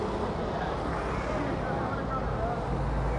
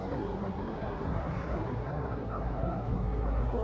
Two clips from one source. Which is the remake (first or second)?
second